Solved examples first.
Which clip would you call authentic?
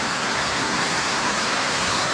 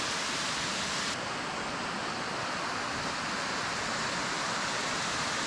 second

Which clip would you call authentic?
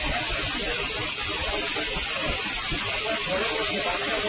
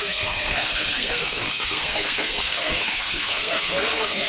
first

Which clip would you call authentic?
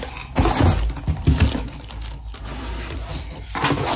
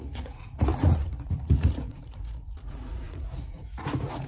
first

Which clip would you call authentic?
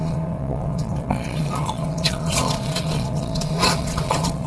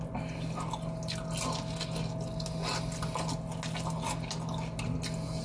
second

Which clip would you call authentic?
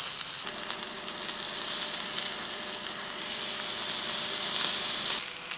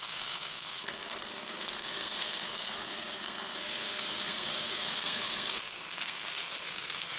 first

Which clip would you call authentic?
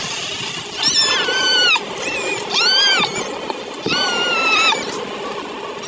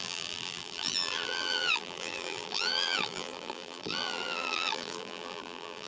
first